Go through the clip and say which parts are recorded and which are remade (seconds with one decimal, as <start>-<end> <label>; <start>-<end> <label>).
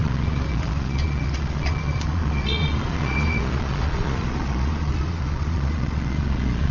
0.0-6.7 remade